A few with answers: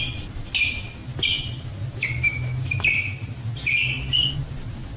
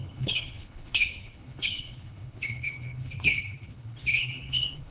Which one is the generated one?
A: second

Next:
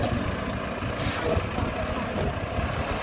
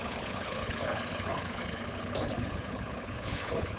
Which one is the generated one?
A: second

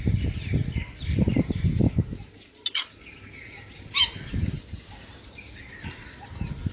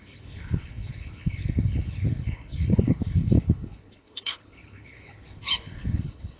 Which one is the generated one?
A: second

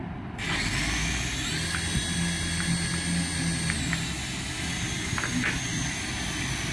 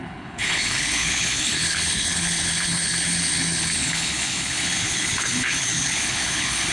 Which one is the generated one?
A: second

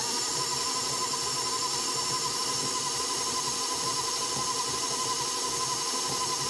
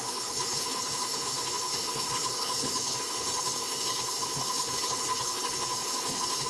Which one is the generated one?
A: second